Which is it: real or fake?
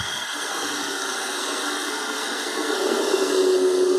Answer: fake